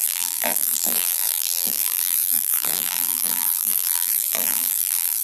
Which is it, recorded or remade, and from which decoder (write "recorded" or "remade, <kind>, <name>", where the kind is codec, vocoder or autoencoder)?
remade, vocoder, BigVGAN v2